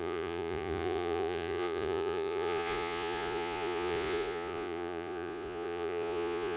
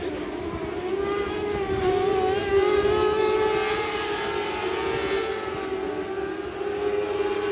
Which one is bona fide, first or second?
second